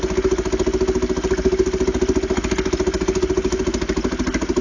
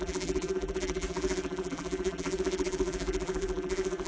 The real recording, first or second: first